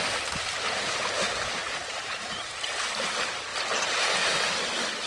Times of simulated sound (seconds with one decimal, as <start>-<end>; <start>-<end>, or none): none